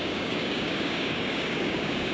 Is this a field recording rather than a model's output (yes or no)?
no